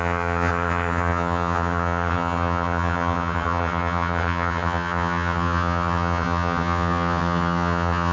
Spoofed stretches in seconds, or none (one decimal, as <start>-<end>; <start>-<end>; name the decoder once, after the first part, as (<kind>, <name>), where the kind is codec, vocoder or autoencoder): 0.0-8.1 (vocoder, HiFi-GAN)